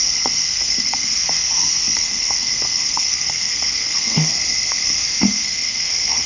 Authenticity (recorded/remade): remade